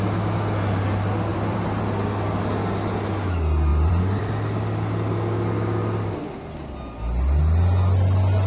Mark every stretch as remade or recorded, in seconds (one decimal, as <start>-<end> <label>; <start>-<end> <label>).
0.0-1.3 recorded; 1.3-1.8 remade; 1.8-3.7 recorded; 3.7-4.3 remade; 4.3-8.5 recorded